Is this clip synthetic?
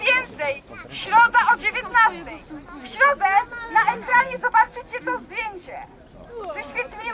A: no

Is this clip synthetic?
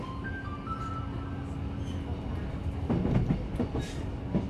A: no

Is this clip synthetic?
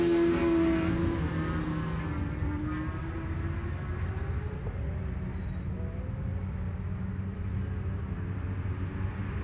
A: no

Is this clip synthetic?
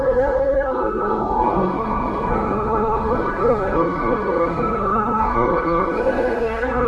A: yes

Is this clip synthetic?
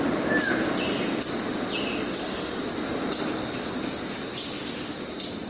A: no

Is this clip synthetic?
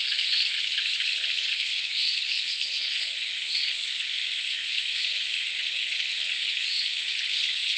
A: yes